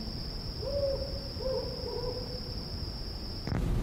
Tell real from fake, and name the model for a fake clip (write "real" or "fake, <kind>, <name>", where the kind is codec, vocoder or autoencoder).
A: real